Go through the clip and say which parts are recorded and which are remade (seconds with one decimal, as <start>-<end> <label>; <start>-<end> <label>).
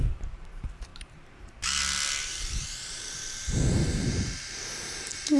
0.0-0.9 remade; 0.9-2.2 recorded; 2.2-5.4 remade